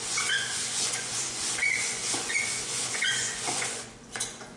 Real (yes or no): no